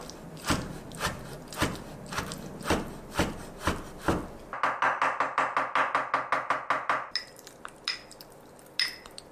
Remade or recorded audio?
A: recorded